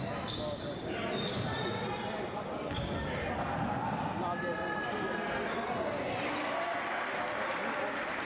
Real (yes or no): yes